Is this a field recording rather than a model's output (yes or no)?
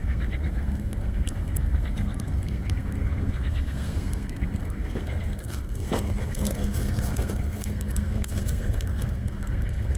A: no